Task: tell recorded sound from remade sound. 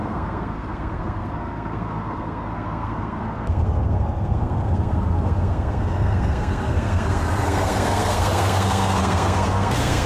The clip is remade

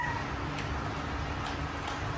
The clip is recorded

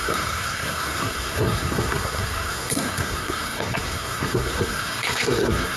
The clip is remade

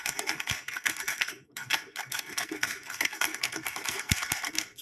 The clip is remade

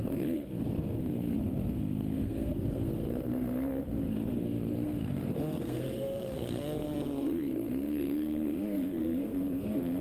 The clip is remade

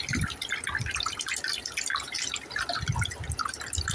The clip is recorded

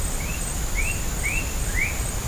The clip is recorded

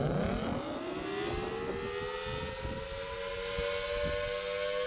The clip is recorded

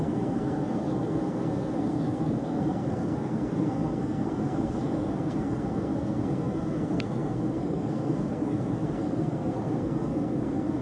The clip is remade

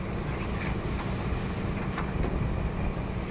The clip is recorded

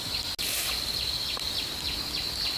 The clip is recorded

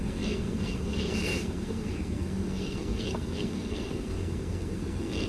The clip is remade